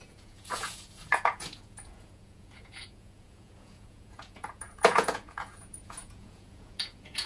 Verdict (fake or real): fake